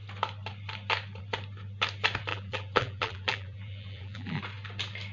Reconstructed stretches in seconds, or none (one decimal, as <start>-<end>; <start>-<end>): 2.3-4.4